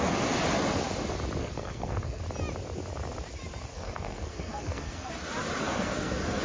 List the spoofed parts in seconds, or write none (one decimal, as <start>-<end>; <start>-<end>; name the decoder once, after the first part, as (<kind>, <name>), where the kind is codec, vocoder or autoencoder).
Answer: 1.4-2.2 (codec, SNAC); 3.7-5.1; 5.6-6.4